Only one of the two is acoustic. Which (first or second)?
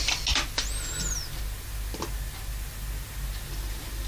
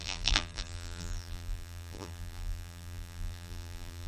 first